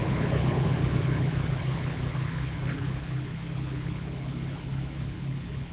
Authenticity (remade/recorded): remade